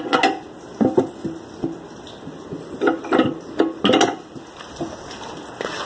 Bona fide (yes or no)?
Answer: yes